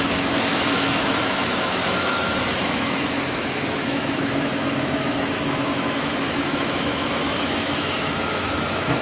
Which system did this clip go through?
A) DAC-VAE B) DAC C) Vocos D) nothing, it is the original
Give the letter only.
A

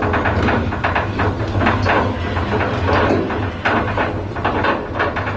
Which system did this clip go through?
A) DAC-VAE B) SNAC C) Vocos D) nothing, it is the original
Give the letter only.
D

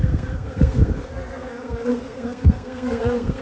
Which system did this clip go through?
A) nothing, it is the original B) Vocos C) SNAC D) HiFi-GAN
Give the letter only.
C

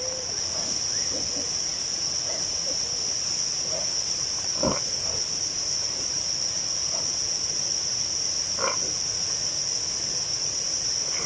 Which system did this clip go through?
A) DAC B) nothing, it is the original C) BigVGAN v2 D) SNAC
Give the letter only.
B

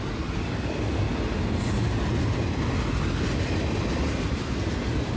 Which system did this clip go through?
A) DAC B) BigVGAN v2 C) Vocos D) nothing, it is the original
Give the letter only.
D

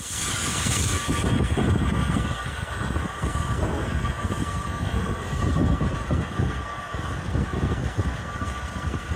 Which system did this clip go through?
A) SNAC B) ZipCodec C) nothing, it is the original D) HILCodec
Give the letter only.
A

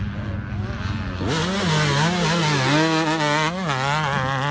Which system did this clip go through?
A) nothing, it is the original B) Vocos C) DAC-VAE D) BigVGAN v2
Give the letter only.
A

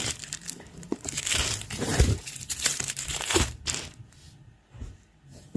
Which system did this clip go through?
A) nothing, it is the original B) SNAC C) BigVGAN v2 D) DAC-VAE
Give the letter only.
C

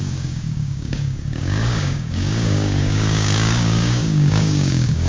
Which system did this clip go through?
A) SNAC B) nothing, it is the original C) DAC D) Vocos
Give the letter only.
C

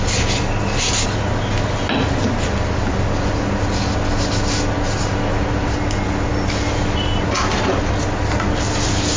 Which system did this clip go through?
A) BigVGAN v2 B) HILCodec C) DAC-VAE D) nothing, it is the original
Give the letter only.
D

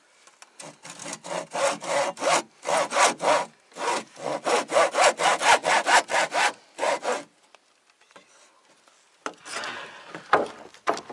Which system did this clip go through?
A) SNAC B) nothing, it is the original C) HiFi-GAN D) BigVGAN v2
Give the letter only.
B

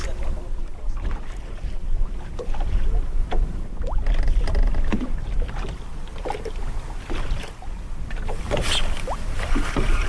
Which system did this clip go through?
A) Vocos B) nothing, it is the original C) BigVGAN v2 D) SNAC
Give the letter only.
B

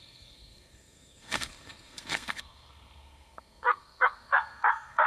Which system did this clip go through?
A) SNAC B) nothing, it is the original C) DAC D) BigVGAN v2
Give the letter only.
A